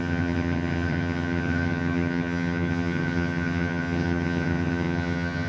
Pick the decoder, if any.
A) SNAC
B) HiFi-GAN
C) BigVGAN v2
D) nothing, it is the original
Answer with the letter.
B